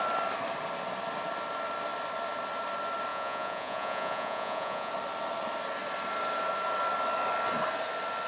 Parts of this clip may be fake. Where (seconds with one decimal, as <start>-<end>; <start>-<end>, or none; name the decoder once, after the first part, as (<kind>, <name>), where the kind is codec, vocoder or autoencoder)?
3.1-4.9 (vocoder, Vocos)